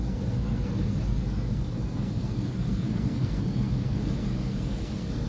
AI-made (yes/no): yes